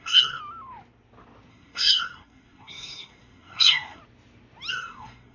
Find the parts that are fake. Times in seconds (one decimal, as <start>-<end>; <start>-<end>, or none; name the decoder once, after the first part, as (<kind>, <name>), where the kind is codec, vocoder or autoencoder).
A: 0.0-0.4 (codec, SNAC); 1.5-4.0; 4.7-5.3